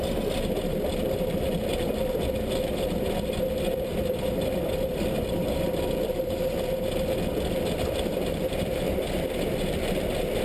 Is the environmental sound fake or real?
real